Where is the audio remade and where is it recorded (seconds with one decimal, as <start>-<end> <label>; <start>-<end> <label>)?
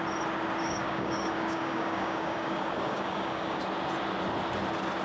0.0-0.6 recorded; 0.6-3.6 remade; 3.6-5.0 recorded